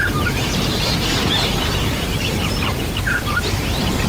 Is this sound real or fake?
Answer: fake